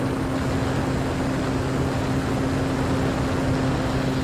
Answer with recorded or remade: recorded